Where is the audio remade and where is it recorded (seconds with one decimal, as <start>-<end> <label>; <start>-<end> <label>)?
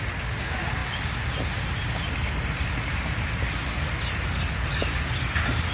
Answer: 0.0-5.7 recorded